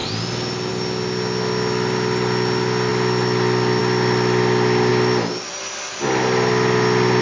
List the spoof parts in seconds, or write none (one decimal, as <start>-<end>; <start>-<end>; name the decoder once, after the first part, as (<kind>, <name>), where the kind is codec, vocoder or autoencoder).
none